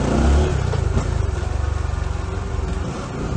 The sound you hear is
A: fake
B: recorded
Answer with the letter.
B